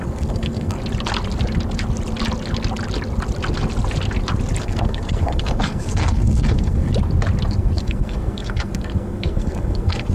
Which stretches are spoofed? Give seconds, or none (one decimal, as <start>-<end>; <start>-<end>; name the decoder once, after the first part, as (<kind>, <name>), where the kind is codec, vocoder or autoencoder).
0.0-0.8 (codec, SNAC); 4.6-6.9; 7.5-10.1

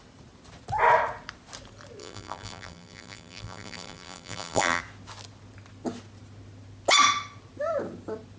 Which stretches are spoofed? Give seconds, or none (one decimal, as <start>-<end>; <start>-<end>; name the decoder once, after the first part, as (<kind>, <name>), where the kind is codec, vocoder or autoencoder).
2.0-4.8 (vocoder, BigVGAN v2)

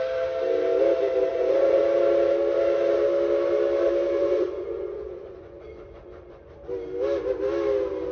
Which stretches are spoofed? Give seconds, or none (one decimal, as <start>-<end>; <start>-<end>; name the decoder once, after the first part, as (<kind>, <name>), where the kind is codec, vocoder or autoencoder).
1.3-1.8 (vocoder, Vocos); 4.2-6.5